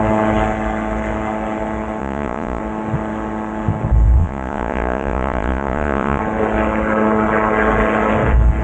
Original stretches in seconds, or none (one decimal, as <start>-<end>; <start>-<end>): 0.0-2.0; 2.6-4.2; 6.2-8.6